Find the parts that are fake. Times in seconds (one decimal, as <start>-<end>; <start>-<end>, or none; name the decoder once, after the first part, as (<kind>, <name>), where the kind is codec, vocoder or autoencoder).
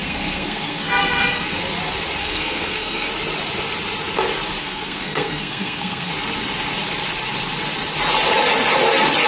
0.0-1.6 (codec, SNAC); 2.2-3.1; 4.6-6.1